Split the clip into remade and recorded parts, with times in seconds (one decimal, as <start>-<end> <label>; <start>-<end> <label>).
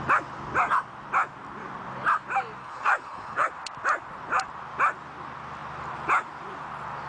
0.0-2.6 recorded; 2.6-3.5 remade; 3.5-7.1 recorded